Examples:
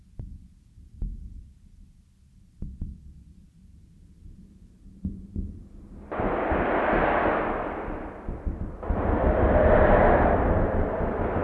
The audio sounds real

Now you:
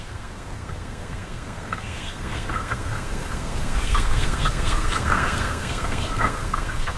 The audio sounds fake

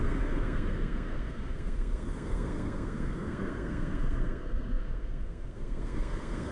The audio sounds fake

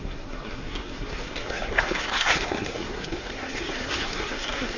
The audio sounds fake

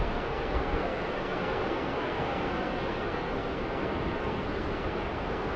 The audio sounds fake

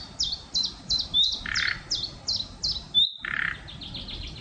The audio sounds real